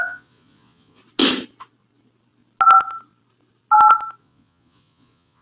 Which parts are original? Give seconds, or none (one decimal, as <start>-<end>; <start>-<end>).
1.0-4.2